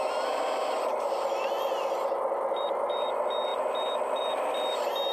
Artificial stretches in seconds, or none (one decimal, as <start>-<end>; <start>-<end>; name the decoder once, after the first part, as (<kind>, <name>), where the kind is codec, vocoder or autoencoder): 0.9-3.1 (vocoder, BigVGAN v2); 3.5-4.2

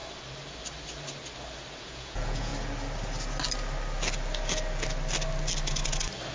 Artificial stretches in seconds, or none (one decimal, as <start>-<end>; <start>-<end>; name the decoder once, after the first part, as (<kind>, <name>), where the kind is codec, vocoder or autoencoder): 1.8-2.5 (vocoder, Vocos)

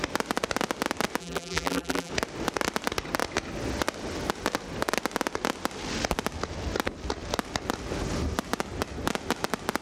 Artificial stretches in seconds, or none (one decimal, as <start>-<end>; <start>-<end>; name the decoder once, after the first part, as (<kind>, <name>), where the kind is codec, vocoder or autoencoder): 1.2-2.1 (vocoder, BigVGAN v2)